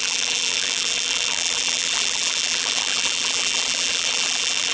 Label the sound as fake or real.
fake